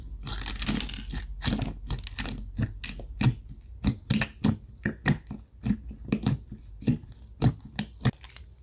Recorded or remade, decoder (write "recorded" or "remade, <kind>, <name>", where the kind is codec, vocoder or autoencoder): recorded